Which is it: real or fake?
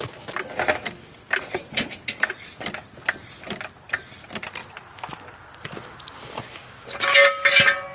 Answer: real